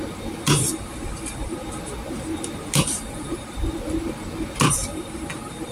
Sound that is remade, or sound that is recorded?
recorded